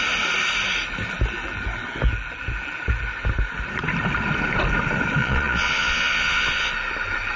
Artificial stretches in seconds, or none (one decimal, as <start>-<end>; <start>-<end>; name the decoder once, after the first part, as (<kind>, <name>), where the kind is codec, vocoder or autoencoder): 5.2-6.7 (vocoder, Vocos)